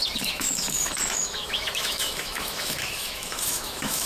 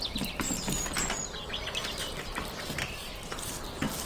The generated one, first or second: first